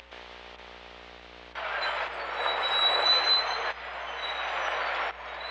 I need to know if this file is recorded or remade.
recorded